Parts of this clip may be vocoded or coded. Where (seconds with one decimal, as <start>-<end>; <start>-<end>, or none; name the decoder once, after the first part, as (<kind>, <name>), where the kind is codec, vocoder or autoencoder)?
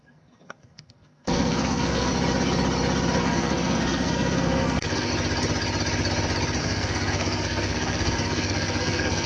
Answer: 0.0-2.1 (codec, SNAC); 3.2-5.1; 6.6-9.3